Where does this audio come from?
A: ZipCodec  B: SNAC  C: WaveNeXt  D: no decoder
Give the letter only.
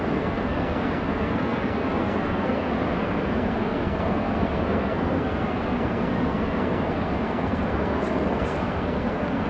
B